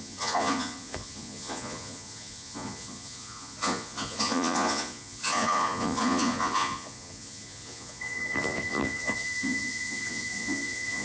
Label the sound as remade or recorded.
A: remade